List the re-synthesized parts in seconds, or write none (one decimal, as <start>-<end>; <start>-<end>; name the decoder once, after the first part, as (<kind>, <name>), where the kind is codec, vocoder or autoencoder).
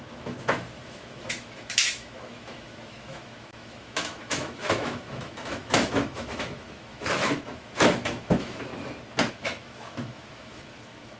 0.0-8.7 (autoencoder, DAC-VAE); 9.3-11.2